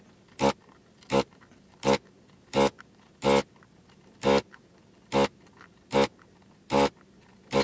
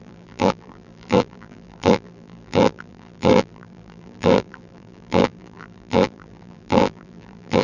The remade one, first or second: second